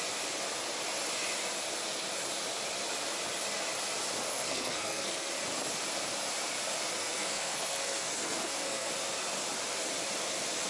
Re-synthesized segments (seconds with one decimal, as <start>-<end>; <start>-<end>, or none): 4.3-5.3; 7.0-8.9